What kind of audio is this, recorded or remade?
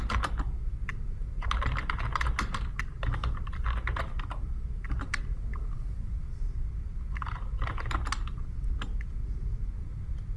recorded